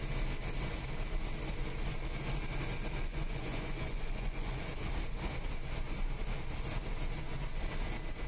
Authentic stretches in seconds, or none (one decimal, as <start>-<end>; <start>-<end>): 0.0-3.1; 4.6-8.3